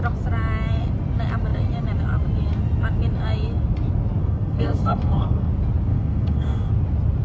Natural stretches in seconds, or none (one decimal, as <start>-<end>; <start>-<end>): 0.0-4.2; 5.5-5.9; 6.7-7.2